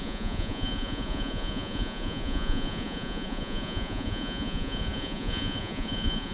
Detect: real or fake fake